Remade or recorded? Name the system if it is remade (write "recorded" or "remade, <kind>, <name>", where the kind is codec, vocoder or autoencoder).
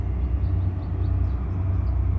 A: recorded